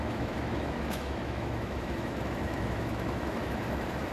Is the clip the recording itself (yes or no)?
no